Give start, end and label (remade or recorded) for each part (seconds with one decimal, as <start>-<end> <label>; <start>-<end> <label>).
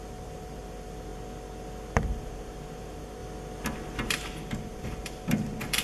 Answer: 0.0-1.1 remade; 1.1-2.0 recorded; 2.0-3.2 remade; 3.2-4.1 recorded; 4.1-5.8 remade